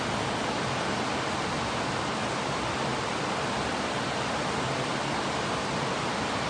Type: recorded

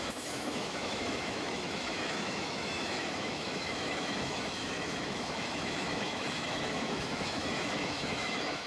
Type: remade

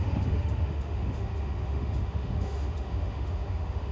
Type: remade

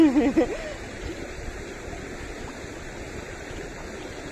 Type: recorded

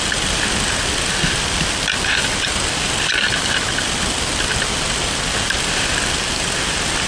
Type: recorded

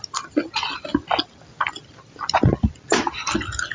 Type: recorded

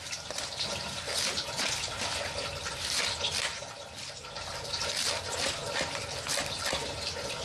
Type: recorded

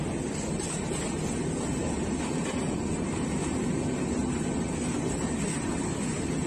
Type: recorded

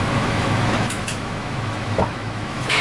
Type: remade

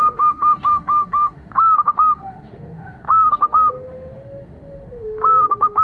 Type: remade